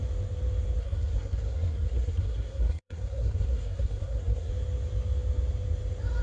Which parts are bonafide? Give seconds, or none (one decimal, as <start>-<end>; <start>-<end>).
0.0-0.8; 4.5-6.2